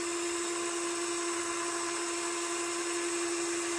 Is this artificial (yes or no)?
no